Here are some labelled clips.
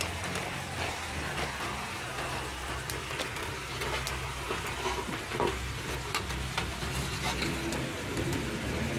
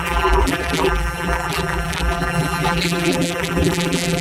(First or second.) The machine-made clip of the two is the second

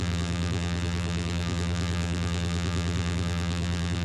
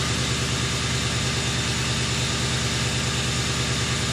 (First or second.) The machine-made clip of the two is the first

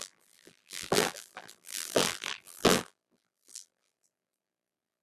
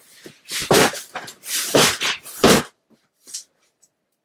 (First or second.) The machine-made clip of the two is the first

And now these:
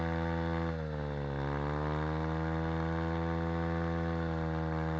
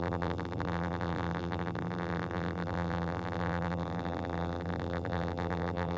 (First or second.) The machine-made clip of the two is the second